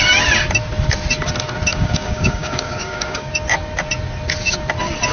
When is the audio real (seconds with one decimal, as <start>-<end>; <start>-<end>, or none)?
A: 0.0-1.7; 3.3-5.1